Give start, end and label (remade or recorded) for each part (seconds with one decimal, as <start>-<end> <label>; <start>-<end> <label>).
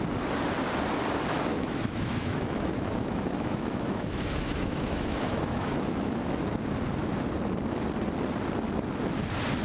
0.0-1.5 recorded; 1.5-6.3 remade; 6.3-9.6 recorded